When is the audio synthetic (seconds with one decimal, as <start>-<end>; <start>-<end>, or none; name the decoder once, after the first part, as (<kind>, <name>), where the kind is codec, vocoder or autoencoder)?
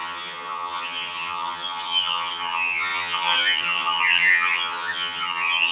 0.0-5.7 (vocoder, HiFi-GAN)